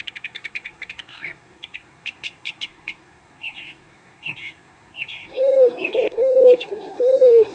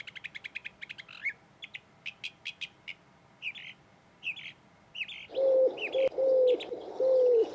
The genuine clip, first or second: second